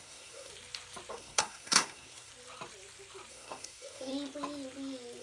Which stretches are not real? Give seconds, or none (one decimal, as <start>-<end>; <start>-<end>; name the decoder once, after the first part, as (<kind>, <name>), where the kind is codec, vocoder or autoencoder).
0.0-0.5 (codec, SNAC); 1.1-2.3; 3.3-4.1